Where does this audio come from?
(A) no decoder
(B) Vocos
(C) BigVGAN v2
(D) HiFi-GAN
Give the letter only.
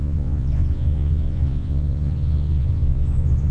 B